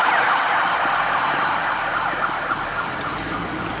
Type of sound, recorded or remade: recorded